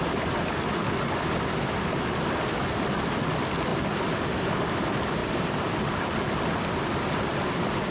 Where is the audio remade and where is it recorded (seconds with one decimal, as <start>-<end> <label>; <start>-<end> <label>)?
0.0-5.2 recorded; 5.2-5.7 remade; 5.7-7.9 recorded